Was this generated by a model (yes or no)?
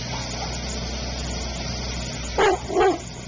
no